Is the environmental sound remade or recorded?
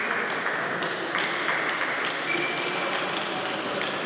recorded